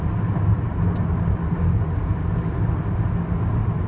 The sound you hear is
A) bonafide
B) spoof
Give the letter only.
A